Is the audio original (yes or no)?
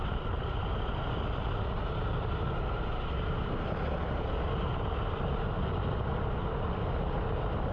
yes